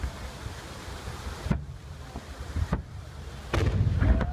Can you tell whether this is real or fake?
real